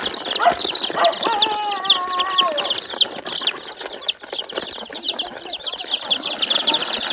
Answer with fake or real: real